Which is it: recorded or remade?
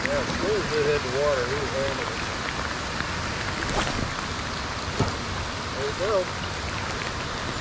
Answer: recorded